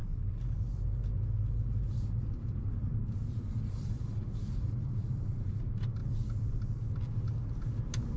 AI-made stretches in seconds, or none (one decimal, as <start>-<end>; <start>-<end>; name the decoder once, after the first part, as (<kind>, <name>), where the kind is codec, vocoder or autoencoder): 1.5-6.0 (vocoder, BigVGAN v2)